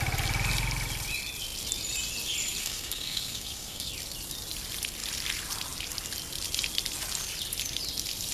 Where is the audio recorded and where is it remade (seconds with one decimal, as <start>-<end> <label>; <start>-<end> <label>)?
0.0-2.6 recorded; 2.6-3.9 remade; 3.9-8.3 recorded